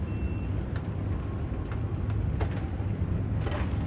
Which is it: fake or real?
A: real